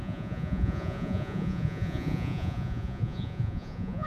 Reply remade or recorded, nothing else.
remade